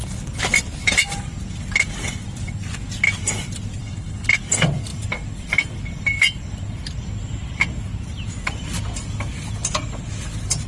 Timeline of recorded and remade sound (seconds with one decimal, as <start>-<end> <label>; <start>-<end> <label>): 0.0-3.8 recorded; 3.8-4.4 remade; 4.4-10.7 recorded